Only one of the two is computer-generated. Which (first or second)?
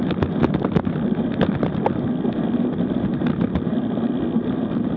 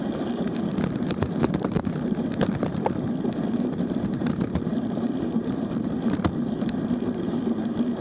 second